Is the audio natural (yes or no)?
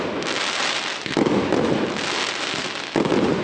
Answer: yes